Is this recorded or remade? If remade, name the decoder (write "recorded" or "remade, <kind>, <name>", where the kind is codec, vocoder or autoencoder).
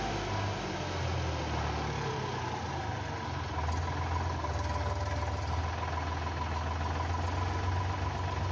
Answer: recorded